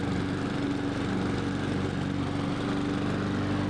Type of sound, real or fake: real